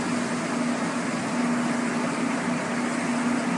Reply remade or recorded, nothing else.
recorded